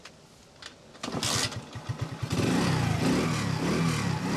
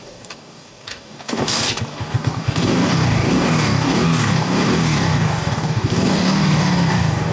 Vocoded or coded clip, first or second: second